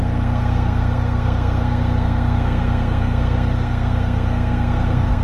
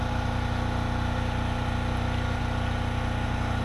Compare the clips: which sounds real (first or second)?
second